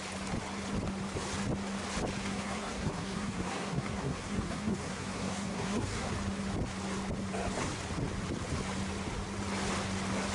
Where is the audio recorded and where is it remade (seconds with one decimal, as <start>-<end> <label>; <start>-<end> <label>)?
0.0-2.2 recorded; 2.2-6.1 remade; 6.1-10.3 recorded

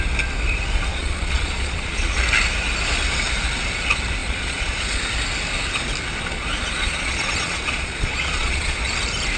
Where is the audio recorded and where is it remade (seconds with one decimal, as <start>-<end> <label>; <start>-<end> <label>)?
0.0-0.9 recorded; 0.9-2.2 remade; 2.2-4.2 recorded; 4.2-5.0 remade; 5.0-6.3 recorded; 6.3-8.8 remade; 8.8-9.4 recorded

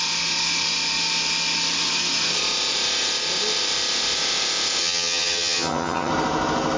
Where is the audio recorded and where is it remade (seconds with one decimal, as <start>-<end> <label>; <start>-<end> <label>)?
0.0-4.8 recorded; 4.8-6.1 remade; 6.1-6.8 recorded

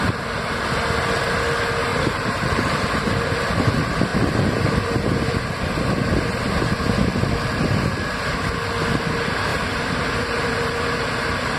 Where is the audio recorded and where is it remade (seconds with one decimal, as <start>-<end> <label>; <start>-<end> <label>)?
0.0-1.9 recorded; 1.9-3.1 remade; 3.1-4.1 recorded; 4.1-5.5 remade; 5.5-9.5 recorded; 9.5-11.6 remade